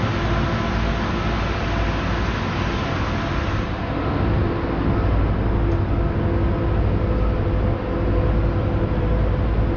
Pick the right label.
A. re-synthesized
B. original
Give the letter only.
B